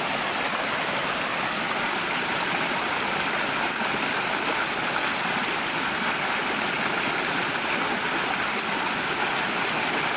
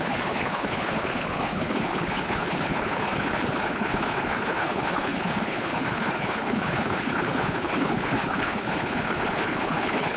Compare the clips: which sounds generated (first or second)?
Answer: second